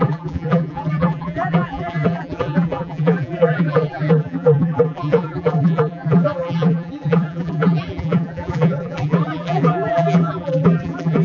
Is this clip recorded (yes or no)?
no